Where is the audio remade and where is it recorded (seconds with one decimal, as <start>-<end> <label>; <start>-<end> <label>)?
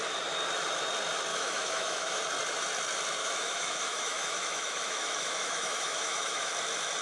0.0-1.3 recorded; 1.3-2.2 remade; 2.2-3.2 recorded; 3.2-6.5 remade; 6.5-7.0 recorded